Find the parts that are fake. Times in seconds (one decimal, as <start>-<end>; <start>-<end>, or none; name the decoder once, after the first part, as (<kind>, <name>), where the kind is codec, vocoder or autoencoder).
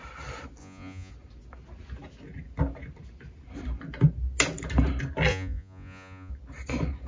0.6-1.1 (vocoder, Vocos); 5.3-6.3